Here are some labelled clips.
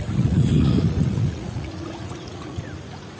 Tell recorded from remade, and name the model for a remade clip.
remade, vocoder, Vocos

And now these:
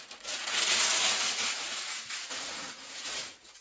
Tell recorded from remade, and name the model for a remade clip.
remade, vocoder, Vocos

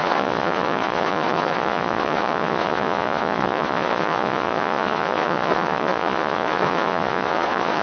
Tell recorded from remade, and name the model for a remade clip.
remade, vocoder, Vocos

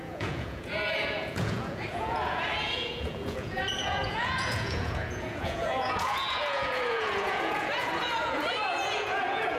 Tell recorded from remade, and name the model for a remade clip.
remade, vocoder, Vocos